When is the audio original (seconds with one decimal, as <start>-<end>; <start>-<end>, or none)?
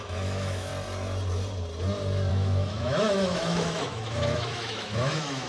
0.7-2.3